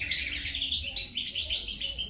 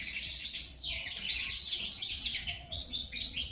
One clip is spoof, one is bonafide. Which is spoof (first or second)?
second